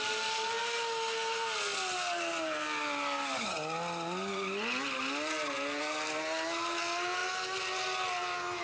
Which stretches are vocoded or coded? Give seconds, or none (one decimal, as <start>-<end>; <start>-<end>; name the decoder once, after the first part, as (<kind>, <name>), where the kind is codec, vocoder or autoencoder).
none